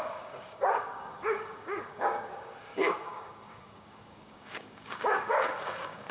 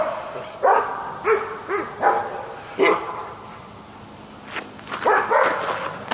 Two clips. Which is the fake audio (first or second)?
first